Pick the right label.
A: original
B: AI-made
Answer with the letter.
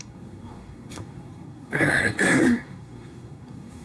B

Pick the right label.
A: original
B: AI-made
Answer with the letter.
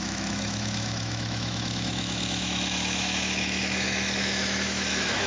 B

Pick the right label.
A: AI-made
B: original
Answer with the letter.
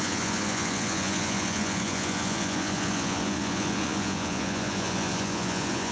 A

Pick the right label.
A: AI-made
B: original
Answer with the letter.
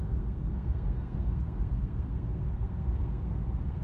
A